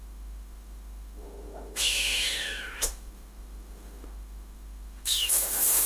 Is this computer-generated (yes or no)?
yes